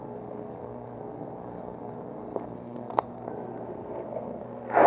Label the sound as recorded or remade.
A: remade